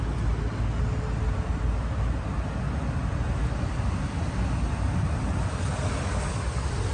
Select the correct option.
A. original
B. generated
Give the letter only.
A